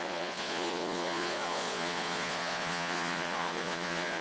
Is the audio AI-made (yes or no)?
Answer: yes